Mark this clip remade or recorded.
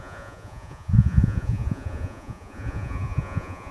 remade